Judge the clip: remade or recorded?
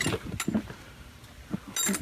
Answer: recorded